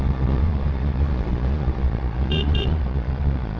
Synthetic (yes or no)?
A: yes